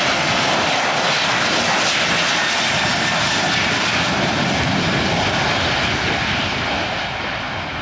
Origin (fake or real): real